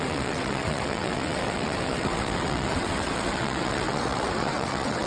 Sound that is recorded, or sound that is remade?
remade